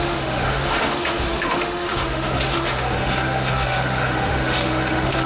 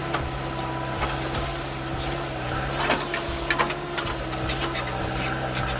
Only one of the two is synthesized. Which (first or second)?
first